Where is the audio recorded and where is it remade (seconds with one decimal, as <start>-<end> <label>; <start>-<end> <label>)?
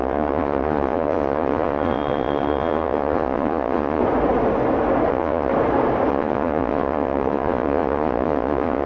0.0-4.0 remade; 4.0-5.1 recorded; 5.1-5.5 remade; 5.5-6.1 recorded; 6.1-8.9 remade